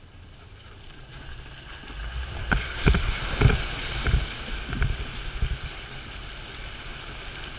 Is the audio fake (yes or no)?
no